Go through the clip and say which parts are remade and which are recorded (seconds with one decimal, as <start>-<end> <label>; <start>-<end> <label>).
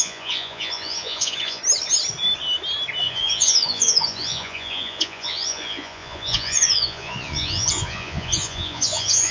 0.0-1.6 remade; 1.6-3.0 recorded; 3.0-9.3 remade